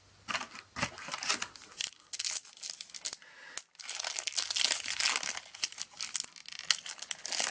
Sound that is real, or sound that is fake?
real